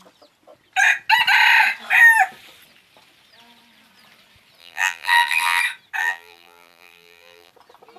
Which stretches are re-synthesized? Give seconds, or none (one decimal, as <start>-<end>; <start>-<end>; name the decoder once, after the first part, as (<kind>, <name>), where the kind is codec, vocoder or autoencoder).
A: 4.6-5.6 (vocoder, BigVGAN v2); 6.0-7.5